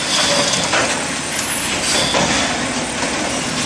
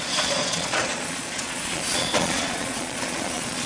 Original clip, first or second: first